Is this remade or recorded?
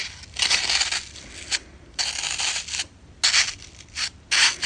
recorded